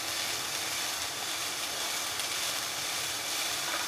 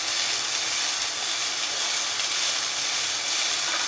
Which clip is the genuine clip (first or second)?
second